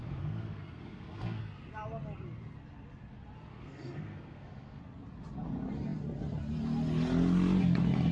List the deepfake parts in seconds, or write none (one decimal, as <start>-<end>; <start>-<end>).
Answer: 0.0-1.4; 3.5-4.8